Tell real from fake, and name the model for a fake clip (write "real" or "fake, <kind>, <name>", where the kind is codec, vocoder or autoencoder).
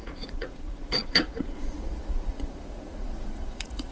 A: fake, vocoder, Vocos